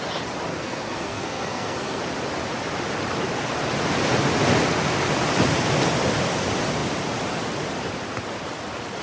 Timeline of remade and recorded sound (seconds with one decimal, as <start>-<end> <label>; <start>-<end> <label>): 0.0-0.5 recorded; 0.5-2.0 remade; 2.0-9.0 recorded